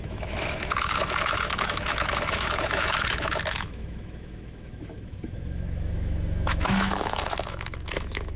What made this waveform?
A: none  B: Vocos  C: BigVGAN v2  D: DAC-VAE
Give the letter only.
D